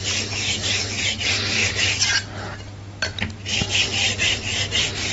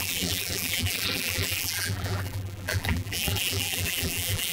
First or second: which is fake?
second